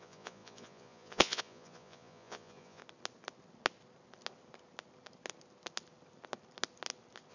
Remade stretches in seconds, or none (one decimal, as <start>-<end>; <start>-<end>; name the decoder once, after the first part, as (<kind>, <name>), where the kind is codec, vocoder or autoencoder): 0.0-2.8 (vocoder, Vocos)